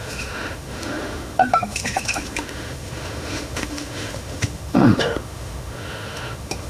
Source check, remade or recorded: remade